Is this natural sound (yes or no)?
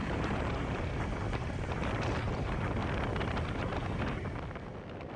yes